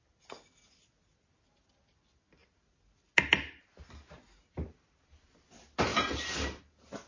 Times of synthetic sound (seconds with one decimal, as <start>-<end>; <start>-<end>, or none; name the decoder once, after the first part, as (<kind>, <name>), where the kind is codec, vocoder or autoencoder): none